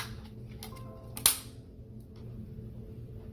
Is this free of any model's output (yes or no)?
yes